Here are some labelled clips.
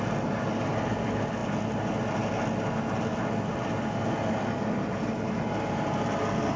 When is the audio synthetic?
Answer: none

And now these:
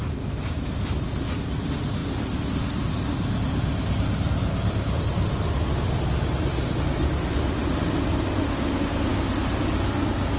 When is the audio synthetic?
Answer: none

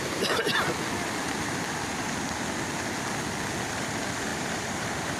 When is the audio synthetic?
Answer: 0.0-0.5 (vocoder, BigVGAN v2); 3.6-5.2

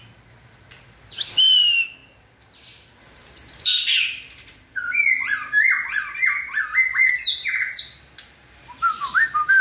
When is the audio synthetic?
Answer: none

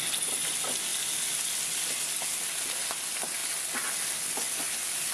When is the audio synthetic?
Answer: none

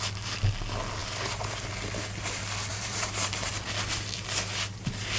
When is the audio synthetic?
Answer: 1.0-1.7 (vocoder, BigVGAN v2); 2.7-3.5

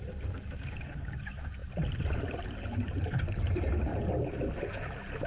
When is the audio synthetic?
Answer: 0.0-3.9 (vocoder, BigVGAN v2); 4.6-5.3